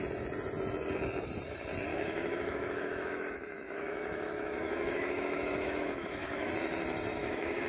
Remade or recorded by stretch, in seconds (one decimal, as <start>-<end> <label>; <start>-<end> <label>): 0.0-1.9 recorded; 1.9-6.5 remade; 6.5-7.1 recorded; 7.1-7.7 remade